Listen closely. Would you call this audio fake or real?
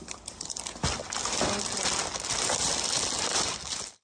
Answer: real